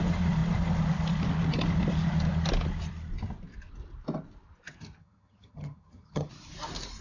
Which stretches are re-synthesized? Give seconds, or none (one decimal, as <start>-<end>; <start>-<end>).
5.0-6.3